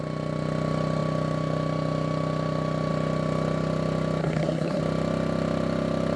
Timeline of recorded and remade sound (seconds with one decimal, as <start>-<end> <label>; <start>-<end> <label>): 0.0-4.2 recorded; 4.2-4.8 remade; 4.8-6.2 recorded